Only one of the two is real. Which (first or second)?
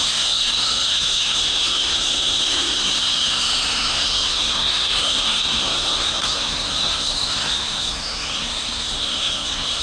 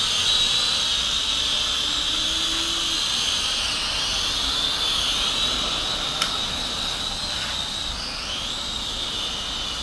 second